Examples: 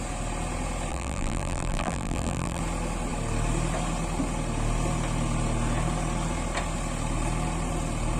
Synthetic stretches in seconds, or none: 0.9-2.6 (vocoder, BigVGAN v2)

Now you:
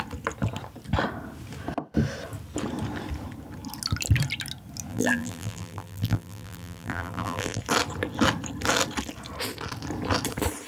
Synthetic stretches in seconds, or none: 4.9-7.6 (vocoder, BigVGAN v2)

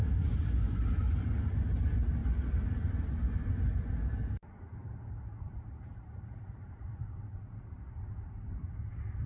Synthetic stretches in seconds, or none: 0.0-1.3 (vocoder, BigVGAN v2); 5.3-8.7

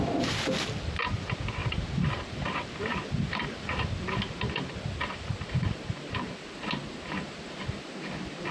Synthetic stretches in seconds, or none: 1.6-6.1 (vocoder, BigVGAN v2)

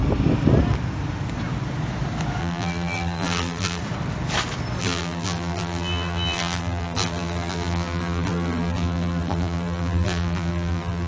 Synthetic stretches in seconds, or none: 2.4-3.8 (vocoder, BigVGAN v2); 4.8-11.1

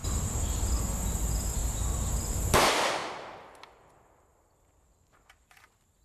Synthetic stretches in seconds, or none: 0.0-0.8 (vocoder, BigVGAN v2); 1.6-2.1

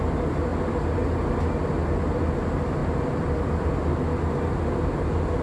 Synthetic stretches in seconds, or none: 2.8-3.7 (vocoder, BigVGAN v2)

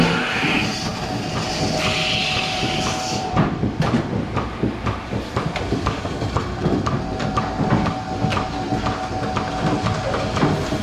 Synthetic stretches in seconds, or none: 0.9-1.5 (vocoder, BigVGAN v2); 2.2-6.1